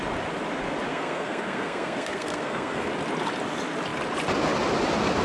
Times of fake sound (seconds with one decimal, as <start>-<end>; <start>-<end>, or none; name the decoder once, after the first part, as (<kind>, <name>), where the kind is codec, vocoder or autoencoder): 0.9-2.9 (codec, SNAC)